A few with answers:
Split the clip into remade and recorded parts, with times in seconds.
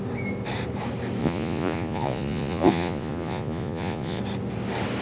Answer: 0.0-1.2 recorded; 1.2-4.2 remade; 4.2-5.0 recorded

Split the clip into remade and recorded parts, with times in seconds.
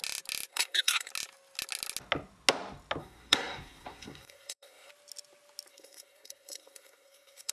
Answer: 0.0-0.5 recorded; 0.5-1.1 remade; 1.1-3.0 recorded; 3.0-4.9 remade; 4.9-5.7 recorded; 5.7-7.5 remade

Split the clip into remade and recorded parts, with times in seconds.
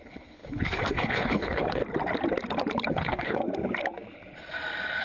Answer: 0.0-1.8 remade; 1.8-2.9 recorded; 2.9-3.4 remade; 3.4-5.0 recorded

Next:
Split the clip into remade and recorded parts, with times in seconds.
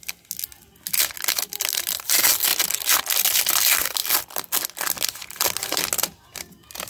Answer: 0.0-6.9 recorded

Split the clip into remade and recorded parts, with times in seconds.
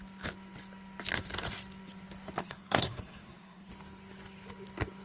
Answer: 0.0-2.4 recorded; 2.4-3.7 remade; 3.7-5.0 recorded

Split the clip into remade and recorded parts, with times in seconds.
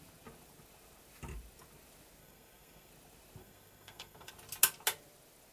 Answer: 0.0-2.2 recorded; 2.2-2.9 remade; 2.9-3.4 recorded; 3.4-4.3 remade; 4.3-5.5 recorded